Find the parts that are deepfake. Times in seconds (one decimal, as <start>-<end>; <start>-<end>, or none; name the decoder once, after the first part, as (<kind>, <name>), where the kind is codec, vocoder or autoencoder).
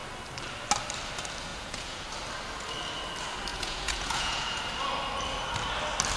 1.5-2.1 (vocoder, Vocos); 3.5-4.6